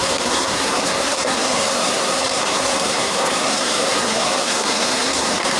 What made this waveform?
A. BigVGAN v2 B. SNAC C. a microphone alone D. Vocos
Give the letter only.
B